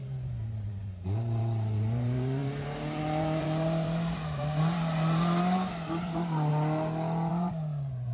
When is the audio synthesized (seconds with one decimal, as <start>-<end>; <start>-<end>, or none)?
0.0-6.5; 7.3-8.1